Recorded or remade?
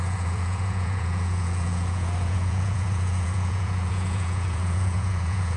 remade